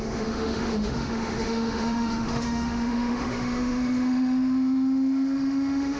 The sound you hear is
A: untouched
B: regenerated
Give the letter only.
B